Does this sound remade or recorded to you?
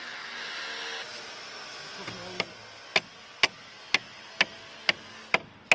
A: recorded